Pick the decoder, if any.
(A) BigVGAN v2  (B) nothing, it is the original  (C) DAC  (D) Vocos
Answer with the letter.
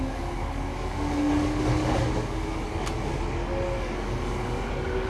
C